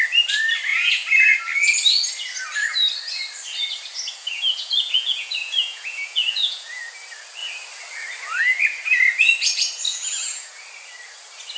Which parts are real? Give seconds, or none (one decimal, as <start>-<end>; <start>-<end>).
0.0-0.7; 1.4-4.2; 6.8-9.9; 10.5-11.6